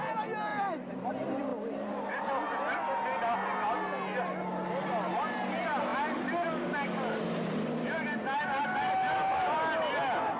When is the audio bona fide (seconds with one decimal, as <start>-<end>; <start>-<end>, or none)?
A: 0.0-0.5; 1.1-10.4